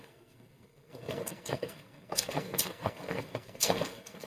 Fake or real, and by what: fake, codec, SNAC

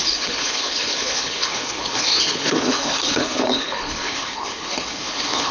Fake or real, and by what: fake, codec, HILCodec